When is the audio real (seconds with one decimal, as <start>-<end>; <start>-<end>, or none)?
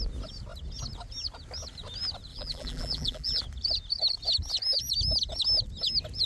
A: 0.0-2.3; 3.4-6.3